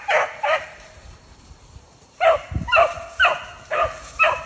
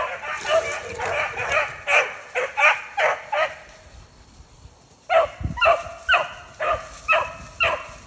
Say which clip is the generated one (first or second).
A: first